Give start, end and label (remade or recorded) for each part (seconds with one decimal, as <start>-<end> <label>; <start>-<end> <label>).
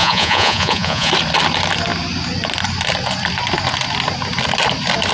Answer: 0.0-1.1 remade; 1.1-5.1 recorded